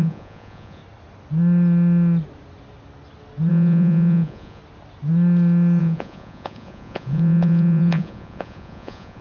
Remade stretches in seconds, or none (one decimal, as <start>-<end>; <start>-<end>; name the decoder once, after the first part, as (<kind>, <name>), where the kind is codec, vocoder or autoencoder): 0.0-0.8 (vocoder, Vocos); 3.5-4.6; 5.8-9.2